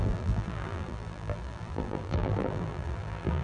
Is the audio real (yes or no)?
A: no